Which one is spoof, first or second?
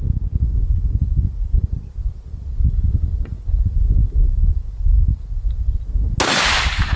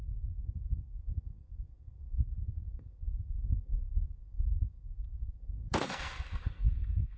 second